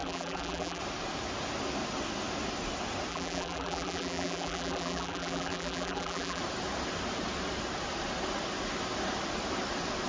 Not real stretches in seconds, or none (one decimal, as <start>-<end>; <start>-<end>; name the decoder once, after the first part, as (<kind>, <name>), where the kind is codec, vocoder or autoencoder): 0.0-0.8 (vocoder, BigVGAN v2); 3.1-6.4